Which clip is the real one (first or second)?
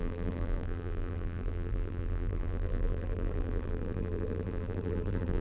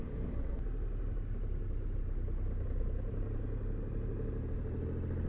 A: second